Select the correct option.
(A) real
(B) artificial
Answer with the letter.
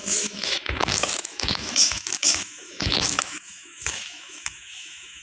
B